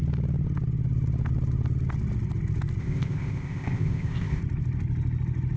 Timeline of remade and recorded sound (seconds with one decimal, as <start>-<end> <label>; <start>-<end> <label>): 0.0-2.8 recorded; 2.8-4.4 remade; 4.4-5.6 recorded